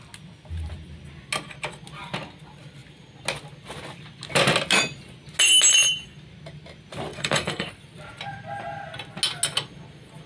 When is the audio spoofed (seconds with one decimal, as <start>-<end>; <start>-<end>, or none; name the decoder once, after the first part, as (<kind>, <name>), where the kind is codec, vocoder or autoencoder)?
7.1-7.8 (codec, SNAC)